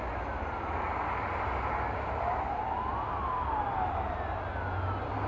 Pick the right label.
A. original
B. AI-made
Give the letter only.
A